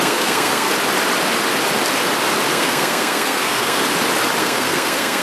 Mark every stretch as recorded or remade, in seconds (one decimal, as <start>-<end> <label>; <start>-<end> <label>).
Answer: 0.0-0.7 remade; 0.7-2.5 recorded; 2.5-3.8 remade; 3.8-4.4 recorded; 4.4-5.2 remade